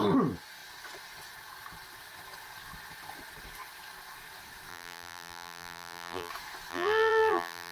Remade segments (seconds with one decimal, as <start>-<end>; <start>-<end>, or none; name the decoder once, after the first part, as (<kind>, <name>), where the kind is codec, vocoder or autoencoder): 4.7-6.3 (vocoder, BigVGAN v2); 6.7-7.7